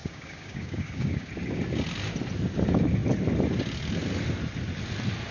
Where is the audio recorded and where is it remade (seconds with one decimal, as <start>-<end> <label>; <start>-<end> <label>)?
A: 0.0-1.3 remade; 1.3-5.3 recorded